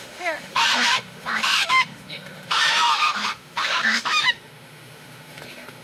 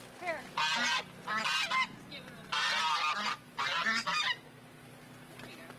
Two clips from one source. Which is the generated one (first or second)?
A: first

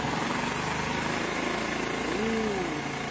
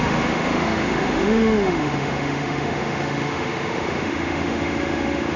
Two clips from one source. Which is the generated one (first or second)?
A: second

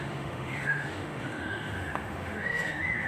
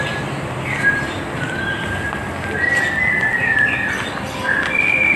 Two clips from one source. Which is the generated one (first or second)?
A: first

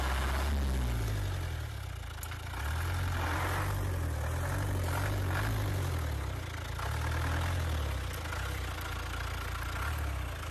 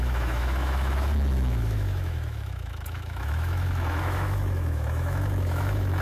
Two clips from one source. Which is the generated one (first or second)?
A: second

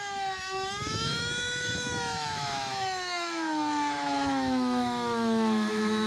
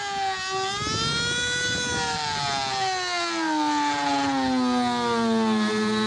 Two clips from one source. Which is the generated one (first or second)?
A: first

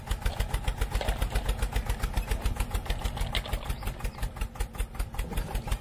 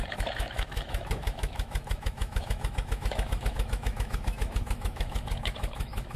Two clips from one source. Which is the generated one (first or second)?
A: second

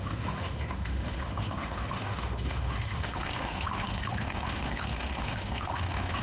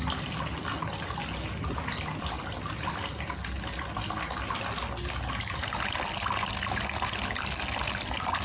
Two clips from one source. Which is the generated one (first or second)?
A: first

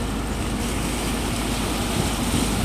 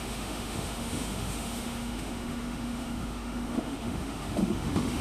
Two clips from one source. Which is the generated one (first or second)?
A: second